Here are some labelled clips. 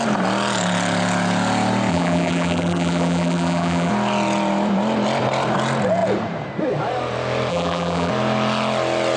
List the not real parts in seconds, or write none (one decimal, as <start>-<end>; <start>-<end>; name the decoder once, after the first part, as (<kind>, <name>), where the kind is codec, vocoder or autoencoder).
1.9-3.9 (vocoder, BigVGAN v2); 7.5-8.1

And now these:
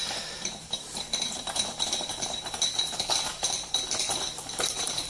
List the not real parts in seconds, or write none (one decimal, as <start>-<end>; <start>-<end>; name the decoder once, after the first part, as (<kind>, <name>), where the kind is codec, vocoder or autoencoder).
0.0-5.1 (vocoder, BigVGAN v2)

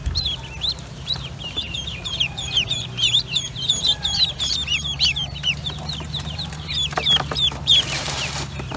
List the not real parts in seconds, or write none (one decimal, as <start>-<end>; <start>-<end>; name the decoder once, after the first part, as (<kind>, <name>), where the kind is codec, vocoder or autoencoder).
0.8-8.8 (vocoder, BigVGAN v2)

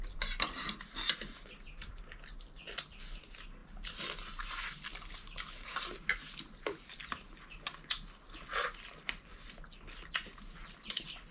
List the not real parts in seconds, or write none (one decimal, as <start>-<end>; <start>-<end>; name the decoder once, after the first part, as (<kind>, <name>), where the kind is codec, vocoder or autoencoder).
none

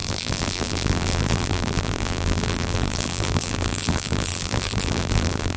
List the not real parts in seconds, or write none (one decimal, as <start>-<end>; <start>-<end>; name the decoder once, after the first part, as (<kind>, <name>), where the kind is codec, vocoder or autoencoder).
0.0-5.6 (vocoder, BigVGAN v2)